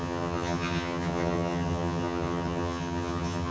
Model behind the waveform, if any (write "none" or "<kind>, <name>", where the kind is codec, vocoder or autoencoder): vocoder, HiFi-GAN